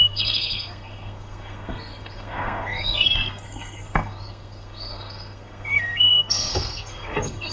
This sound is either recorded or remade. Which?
remade